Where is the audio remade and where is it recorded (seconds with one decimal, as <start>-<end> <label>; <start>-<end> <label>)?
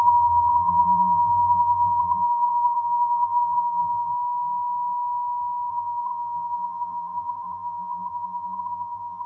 0.0-4.1 remade; 4.1-5.7 recorded; 5.7-9.3 remade